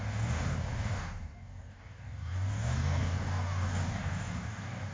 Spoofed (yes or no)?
yes